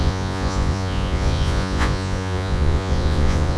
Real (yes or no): no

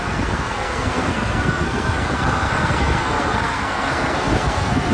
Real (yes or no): no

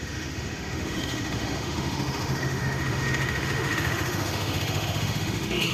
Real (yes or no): no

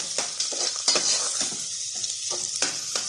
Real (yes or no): yes